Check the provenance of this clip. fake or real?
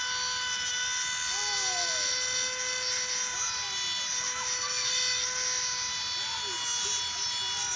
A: real